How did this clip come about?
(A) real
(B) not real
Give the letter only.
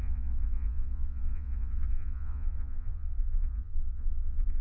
B